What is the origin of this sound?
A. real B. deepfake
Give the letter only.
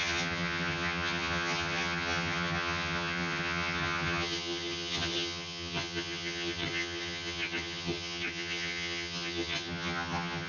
B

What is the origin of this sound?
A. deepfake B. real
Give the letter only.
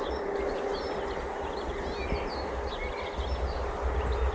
B